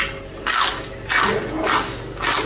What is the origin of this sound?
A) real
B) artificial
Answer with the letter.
A